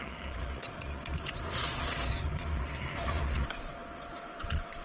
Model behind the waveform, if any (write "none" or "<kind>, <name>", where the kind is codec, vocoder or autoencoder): vocoder, Vocos